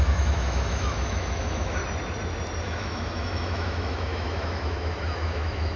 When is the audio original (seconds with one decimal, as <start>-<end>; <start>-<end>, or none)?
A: 1.8-2.6